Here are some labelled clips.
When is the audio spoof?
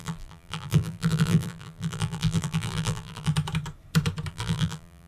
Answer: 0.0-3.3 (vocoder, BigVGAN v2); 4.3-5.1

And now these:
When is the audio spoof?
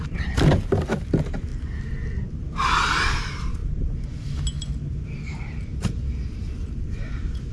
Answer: 0.0-1.5 (vocoder, BigVGAN v2); 2.3-3.6; 5.7-7.5